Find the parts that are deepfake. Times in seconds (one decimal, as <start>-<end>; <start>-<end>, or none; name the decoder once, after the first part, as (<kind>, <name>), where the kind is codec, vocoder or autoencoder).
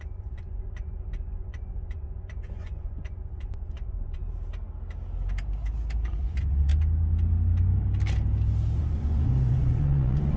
0.0-4.2 (vocoder, Vocos); 6.1-6.7; 8.8-10.4